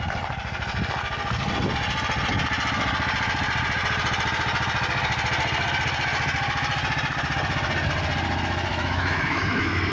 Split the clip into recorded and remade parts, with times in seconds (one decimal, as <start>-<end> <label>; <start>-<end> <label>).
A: 0.0-8.7 recorded; 8.7-9.9 remade